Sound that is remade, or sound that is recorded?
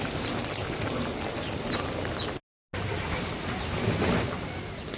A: recorded